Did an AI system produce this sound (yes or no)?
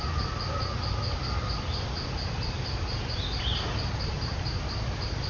no